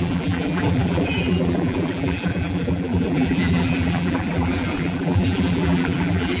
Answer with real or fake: fake